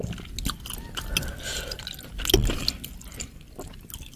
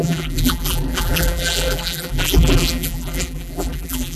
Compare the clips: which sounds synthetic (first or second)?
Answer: second